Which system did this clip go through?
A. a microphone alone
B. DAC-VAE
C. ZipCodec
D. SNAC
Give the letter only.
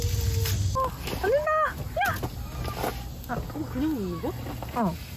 A